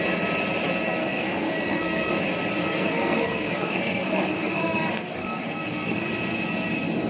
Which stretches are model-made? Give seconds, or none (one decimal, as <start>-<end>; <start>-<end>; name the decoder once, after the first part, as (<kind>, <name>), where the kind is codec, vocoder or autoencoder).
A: 1.0-2.2 (codec, SNAC); 2.6-6.1